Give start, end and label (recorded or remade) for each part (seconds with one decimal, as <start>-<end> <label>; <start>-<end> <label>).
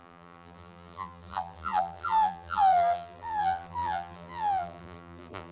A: 0.0-5.5 remade